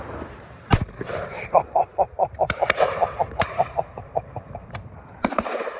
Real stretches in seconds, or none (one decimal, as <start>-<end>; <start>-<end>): none